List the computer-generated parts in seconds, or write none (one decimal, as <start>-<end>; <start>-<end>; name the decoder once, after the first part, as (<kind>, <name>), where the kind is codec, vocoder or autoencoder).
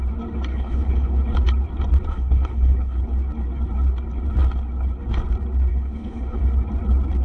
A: 0.5-1.2 (codec, HILCodec); 2.1-3.0; 5.7-6.4